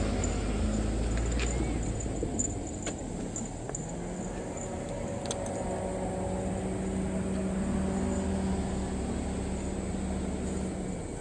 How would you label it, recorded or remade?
recorded